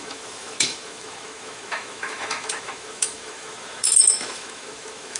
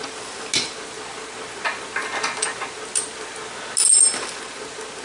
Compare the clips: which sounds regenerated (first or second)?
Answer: first